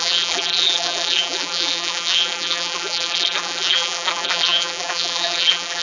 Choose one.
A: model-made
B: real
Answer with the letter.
A